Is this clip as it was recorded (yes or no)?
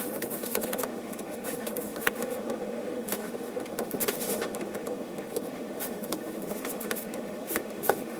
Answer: no